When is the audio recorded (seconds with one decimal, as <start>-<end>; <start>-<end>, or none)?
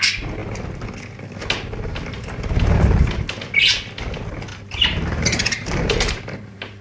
0.0-4.5